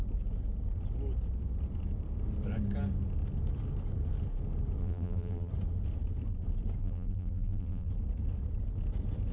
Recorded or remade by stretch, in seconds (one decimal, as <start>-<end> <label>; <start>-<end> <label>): 0.0-4.8 recorded; 4.8-5.5 remade; 5.5-6.8 recorded; 6.8-7.9 remade; 7.9-9.3 recorded